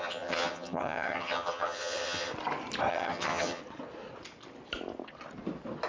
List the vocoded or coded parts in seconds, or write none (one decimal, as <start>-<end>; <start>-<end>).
0.0-2.3; 2.9-3.6